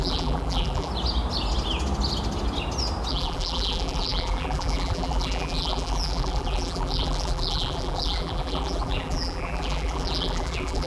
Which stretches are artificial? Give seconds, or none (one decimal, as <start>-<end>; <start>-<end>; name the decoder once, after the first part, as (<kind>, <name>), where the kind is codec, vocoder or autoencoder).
0.0-0.9 (vocoder, BigVGAN v2); 3.1-10.9